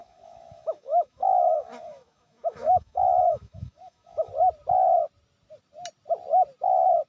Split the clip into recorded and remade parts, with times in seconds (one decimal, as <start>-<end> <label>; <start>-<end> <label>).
0.0-4.3 remade; 4.3-7.1 recorded